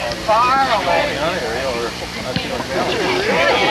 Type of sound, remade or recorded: recorded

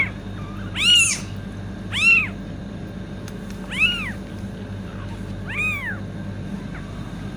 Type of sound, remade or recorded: recorded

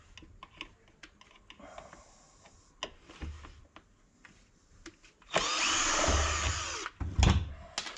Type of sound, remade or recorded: recorded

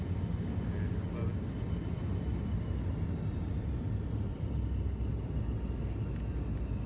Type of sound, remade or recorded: recorded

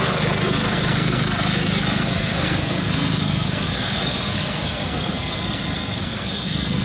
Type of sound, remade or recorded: remade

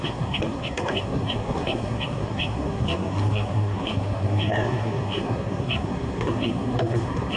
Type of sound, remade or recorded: remade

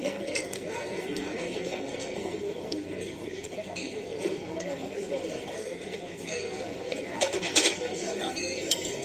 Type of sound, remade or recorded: remade